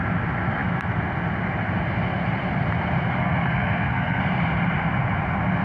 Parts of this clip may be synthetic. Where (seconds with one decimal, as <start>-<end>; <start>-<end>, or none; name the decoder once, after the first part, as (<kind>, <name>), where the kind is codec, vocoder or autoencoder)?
3.2-4.2 (codec, SNAC)